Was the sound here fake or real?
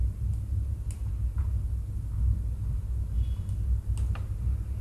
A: real